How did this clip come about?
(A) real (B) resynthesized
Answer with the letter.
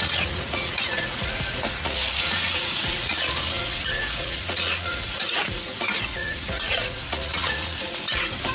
B